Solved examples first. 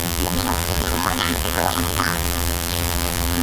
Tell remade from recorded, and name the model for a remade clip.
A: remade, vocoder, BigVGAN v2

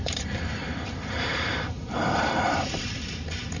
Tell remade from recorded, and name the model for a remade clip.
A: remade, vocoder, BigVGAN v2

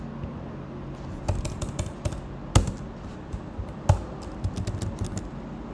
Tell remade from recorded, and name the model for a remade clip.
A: recorded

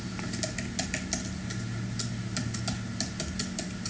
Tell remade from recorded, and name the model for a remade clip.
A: recorded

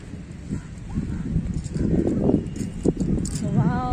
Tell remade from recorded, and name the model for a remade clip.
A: recorded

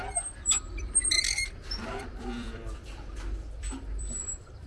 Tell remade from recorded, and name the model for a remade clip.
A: remade, vocoder, BigVGAN v2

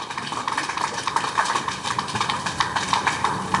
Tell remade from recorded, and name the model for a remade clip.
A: remade, vocoder, BigVGAN v2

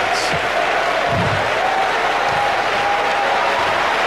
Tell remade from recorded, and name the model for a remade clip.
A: recorded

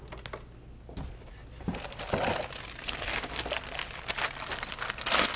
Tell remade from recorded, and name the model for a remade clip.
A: recorded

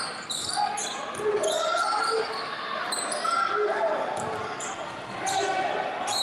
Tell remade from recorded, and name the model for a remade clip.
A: recorded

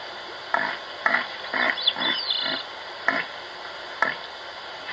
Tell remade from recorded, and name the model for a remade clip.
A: recorded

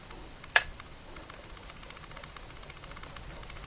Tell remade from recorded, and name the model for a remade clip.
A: remade, vocoder, BigVGAN v2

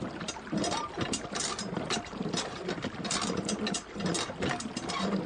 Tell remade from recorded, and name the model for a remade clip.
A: recorded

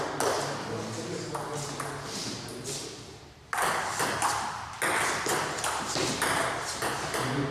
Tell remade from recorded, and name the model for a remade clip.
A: recorded